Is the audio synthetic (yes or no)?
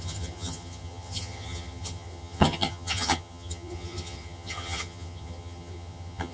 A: yes